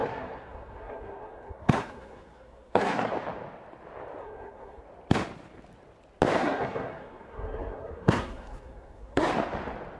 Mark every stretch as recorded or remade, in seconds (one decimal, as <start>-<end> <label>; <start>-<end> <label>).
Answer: 0.0-3.1 remade; 3.1-4.2 recorded; 4.2-4.8 remade; 4.8-6.4 recorded; 6.4-9.3 remade; 9.3-10.0 recorded